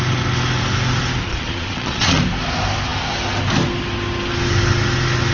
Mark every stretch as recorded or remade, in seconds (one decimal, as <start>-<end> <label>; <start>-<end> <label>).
0.0-1.3 recorded; 1.3-2.2 remade; 2.2-5.3 recorded

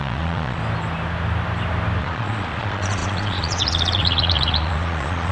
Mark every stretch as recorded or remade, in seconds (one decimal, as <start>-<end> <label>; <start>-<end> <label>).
0.0-0.6 remade; 0.6-2.0 recorded; 2.0-5.3 remade

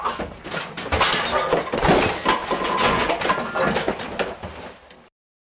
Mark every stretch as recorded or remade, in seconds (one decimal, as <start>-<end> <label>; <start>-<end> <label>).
0.0-2.4 recorded; 2.4-3.1 remade; 3.1-5.5 recorded

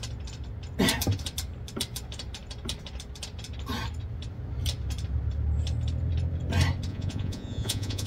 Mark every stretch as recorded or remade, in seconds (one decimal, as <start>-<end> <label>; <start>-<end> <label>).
0.0-6.9 recorded; 6.9-8.1 remade

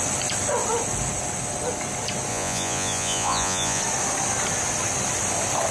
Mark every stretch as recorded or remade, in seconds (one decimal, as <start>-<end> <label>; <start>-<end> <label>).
0.0-2.3 recorded; 2.3-3.8 remade; 3.8-5.7 recorded

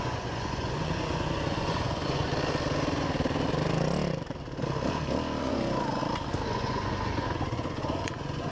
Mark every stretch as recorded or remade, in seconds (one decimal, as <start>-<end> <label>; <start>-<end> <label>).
0.0-2.3 remade; 2.3-5.4 recorded; 5.4-6.0 remade; 6.0-6.5 recorded; 6.5-8.5 remade

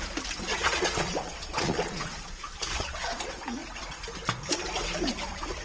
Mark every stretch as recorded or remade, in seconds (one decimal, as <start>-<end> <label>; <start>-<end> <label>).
0.0-0.5 recorded; 0.5-3.2 remade; 3.2-5.6 recorded

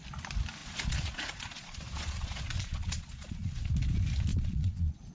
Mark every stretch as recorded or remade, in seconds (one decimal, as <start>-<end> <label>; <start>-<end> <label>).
0.0-0.6 recorded; 0.6-3.7 remade; 3.7-4.3 recorded; 4.3-5.1 remade